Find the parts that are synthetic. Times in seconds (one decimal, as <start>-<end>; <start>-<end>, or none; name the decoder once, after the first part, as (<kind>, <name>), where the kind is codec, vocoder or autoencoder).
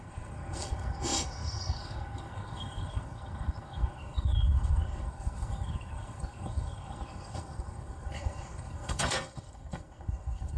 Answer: 0.0-10.6 (codec, SNAC)